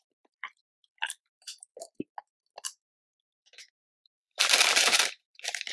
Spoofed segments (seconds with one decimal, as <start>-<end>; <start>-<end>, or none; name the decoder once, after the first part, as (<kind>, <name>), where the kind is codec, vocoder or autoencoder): 0.0-1.7 (vocoder, BigVGAN v2); 3.7-5.7